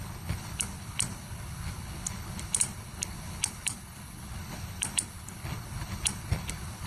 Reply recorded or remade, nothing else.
remade